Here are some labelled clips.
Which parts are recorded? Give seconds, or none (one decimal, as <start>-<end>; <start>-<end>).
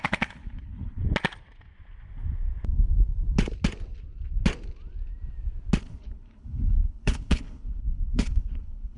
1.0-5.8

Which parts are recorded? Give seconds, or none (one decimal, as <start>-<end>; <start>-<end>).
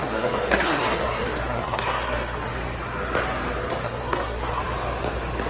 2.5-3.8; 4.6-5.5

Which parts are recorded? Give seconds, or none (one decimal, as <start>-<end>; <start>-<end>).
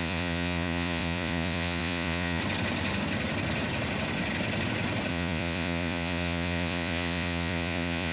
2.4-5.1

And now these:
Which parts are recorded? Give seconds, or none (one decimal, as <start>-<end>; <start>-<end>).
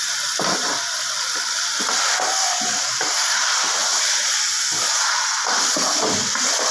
0.0-6.7